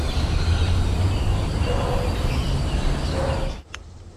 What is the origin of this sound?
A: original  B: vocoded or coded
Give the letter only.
A